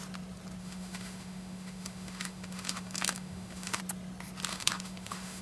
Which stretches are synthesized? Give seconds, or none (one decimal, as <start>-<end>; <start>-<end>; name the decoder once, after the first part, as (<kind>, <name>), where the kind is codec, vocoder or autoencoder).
0.6-3.8 (autoencoder, DAC-VAE); 4.5-5.4